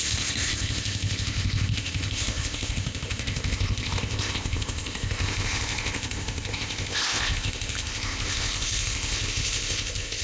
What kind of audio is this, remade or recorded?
remade